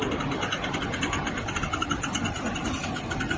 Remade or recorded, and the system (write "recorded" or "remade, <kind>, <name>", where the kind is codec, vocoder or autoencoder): recorded